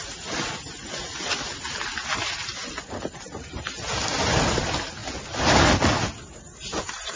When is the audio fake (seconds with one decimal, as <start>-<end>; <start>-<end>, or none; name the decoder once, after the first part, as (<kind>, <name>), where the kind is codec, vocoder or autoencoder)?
2.5-3.1 (vocoder, BigVGAN v2)